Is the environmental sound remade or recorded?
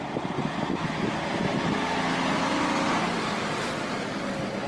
recorded